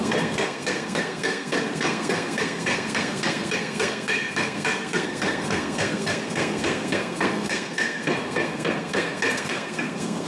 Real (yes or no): no